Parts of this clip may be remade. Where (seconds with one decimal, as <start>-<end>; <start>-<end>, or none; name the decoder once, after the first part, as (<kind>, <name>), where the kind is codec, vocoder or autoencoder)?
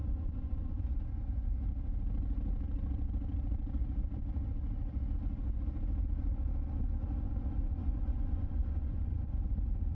0.0-1.0 (vocoder, Vocos); 7.8-9.1